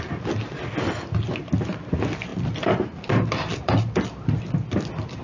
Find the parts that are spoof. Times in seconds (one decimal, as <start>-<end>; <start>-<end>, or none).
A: none